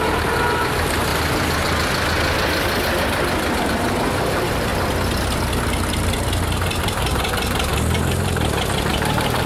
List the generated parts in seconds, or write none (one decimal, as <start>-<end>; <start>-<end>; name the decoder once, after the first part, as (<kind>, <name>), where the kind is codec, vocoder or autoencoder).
0.0-1.1 (vocoder, BigVGAN v2); 3.6-4.7; 6.8-9.5